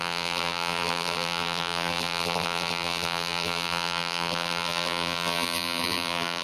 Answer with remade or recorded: remade